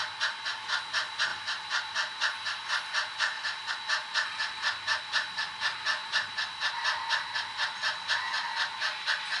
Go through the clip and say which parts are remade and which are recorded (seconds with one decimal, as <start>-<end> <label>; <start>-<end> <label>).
0.0-1.3 recorded; 1.3-3.7 remade; 3.7-9.4 recorded